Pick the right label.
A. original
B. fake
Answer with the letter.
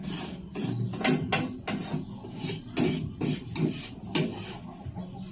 A